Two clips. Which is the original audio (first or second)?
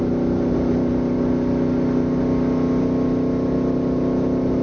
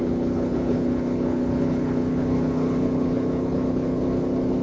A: first